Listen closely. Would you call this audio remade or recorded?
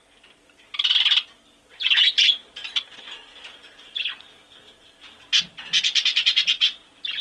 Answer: recorded